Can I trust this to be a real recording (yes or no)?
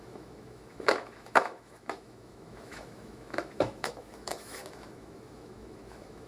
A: no